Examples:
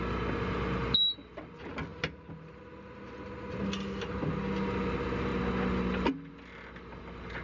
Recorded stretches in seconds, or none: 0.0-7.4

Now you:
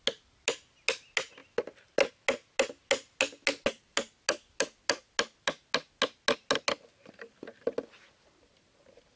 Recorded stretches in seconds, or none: 0.0-9.2

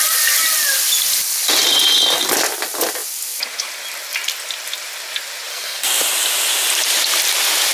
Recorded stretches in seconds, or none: 0.0-5.5; 6.0-7.7

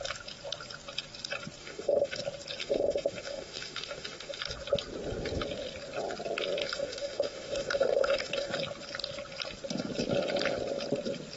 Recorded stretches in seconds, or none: 0.0-1.6; 2.2-2.6; 4.4-6.6; 8.5-11.4

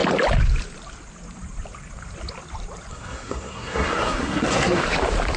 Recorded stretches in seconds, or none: 0.0-2.9; 4.8-5.4

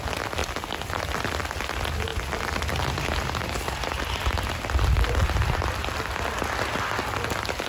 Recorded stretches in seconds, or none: 0.0-0.4; 1.1-7.7